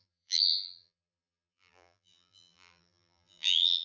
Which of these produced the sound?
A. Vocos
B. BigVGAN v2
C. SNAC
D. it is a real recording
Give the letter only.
B